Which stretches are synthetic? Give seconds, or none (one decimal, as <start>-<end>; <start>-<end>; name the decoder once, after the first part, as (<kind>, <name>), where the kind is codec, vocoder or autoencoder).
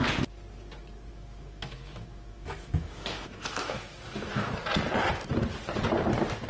1.1-4.5 (autoencoder, DAC-VAE)